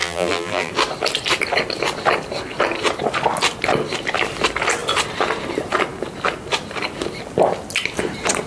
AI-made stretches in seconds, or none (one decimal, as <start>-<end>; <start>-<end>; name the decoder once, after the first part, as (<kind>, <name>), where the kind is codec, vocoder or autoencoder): 0.0-0.7 (vocoder, BigVGAN v2)